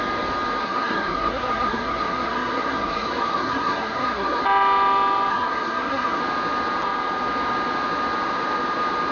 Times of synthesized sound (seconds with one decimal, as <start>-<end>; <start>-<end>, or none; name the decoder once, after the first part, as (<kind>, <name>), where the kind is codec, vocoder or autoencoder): 0.6-4.4 (codec, SNAC); 5.3-6.2